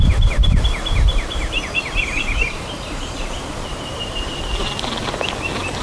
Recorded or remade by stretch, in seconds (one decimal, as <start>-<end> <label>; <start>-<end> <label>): 0.0-1.1 recorded; 1.1-3.3 remade; 3.3-3.7 recorded; 3.7-4.5 remade; 4.5-5.8 recorded